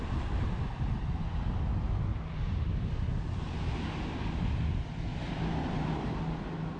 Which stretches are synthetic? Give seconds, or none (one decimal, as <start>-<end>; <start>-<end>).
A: 2.1-2.9; 5.1-6.2